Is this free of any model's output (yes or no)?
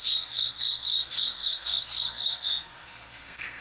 no